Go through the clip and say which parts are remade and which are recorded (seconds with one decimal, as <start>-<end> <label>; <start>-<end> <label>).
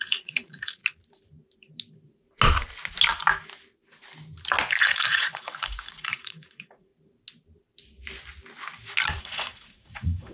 0.0-0.8 remade; 0.8-4.8 recorded; 4.8-6.9 remade; 6.9-9.2 recorded; 9.2-10.3 remade